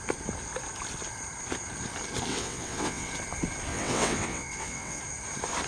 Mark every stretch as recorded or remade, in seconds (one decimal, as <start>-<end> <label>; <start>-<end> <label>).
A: 0.0-2.3 recorded; 2.3-3.1 remade; 3.1-3.7 recorded; 3.7-5.0 remade; 5.0-5.7 recorded